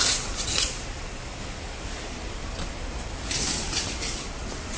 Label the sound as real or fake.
fake